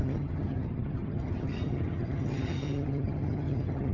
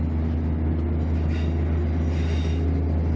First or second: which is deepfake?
first